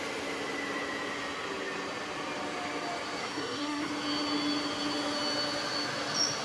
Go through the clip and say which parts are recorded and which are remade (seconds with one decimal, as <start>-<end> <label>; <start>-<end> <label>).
0.0-3.2 recorded; 3.2-3.9 remade; 3.9-6.4 recorded